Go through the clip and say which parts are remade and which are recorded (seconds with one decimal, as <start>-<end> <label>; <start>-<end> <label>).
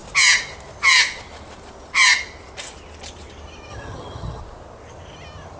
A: 0.0-3.7 recorded; 3.7-4.4 remade; 4.4-5.6 recorded